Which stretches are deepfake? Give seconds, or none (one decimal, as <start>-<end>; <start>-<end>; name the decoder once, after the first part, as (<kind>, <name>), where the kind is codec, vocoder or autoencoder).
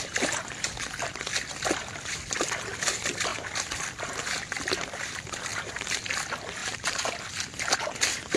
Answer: 5.5-6.0 (vocoder, BigVGAN v2); 6.6-7.2